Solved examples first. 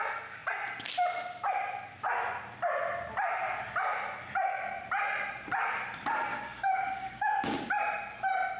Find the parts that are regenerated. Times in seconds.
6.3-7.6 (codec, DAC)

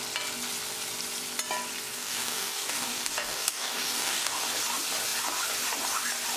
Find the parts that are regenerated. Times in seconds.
1.9-4.4 (codec, DAC)

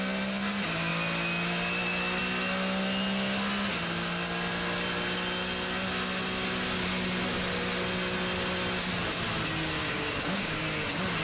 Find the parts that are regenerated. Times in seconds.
9.8-10.6 (codec, DAC)

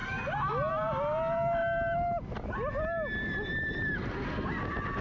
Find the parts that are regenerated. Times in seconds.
none

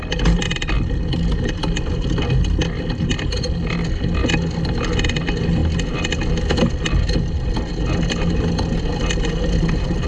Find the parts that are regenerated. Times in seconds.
none

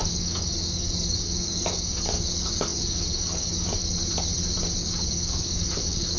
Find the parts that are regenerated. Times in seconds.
0.0-3.9 (codec, DAC); 4.8-6.2